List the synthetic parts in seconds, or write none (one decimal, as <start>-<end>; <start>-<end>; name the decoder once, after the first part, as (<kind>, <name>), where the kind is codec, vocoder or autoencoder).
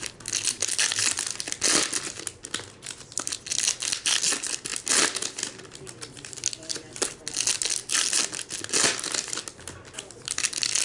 none